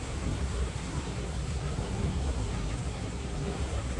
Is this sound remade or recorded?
remade